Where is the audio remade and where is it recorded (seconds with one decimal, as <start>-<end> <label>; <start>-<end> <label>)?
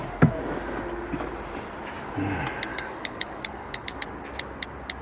0.0-2.7 recorded; 2.7-4.2 remade; 4.2-5.0 recorded